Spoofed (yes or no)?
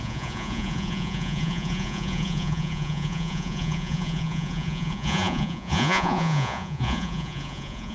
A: yes